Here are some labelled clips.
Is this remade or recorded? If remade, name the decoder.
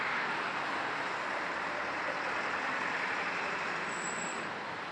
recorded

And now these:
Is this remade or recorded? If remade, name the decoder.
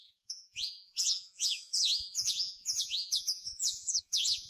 remade, vocoder, Vocos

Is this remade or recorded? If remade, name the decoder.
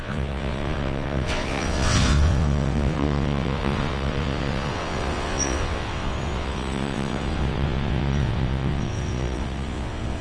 remade, vocoder, WaveNeXt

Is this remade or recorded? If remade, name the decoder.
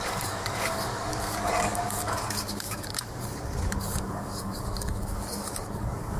remade, codec, DAC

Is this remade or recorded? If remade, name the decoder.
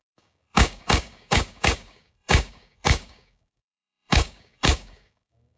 remade, codec, DAC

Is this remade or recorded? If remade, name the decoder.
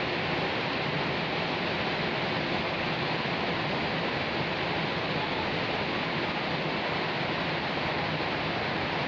recorded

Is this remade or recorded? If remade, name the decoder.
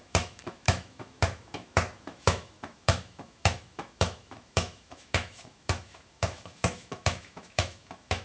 remade, autoencoder, DAC-VAE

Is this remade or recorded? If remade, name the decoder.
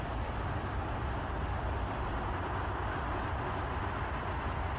recorded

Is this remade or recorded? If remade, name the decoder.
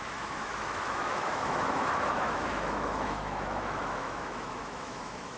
remade, autoencoder, DAC-VAE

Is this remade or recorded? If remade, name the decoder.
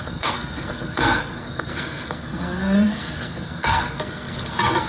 remade, codec, SNAC